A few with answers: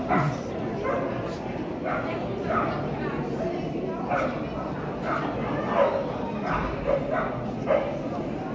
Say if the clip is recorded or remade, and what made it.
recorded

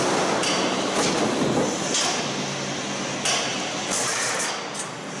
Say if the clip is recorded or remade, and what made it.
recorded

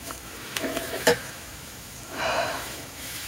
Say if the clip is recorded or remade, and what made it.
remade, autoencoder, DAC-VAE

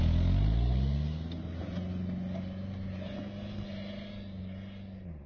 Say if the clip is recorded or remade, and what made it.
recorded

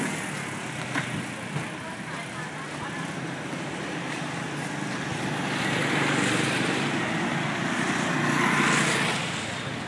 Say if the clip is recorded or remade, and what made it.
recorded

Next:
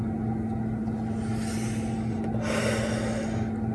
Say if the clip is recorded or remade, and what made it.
recorded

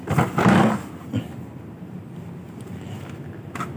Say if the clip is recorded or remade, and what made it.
recorded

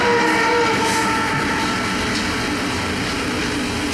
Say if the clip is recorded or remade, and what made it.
recorded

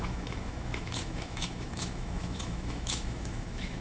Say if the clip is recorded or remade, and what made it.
remade, autoencoder, DAC-VAE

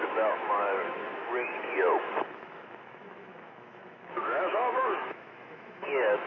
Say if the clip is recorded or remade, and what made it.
remade, autoencoder, DAC-VAE